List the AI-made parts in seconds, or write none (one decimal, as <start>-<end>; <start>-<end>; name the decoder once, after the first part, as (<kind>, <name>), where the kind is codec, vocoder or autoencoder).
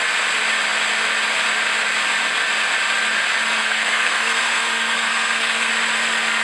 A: 3.6-5.7 (codec, SNAC)